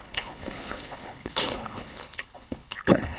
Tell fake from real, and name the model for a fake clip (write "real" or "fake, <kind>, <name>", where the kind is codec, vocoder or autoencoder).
fake, codec, HILCodec